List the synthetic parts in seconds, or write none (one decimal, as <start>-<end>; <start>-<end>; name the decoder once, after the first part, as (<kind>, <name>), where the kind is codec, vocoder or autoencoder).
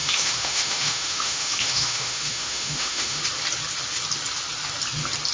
0.0-3.2 (autoencoder, DAC-VAE)